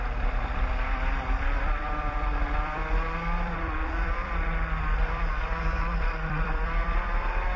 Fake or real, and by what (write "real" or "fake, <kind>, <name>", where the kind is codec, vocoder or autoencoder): fake, vocoder, BigVGAN v2